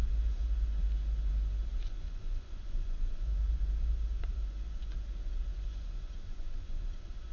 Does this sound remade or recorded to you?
remade